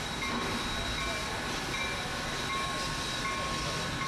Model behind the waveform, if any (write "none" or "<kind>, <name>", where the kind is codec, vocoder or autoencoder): none